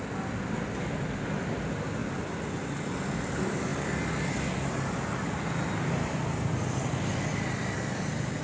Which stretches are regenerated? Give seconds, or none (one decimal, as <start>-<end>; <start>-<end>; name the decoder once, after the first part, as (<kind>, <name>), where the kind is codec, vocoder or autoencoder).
none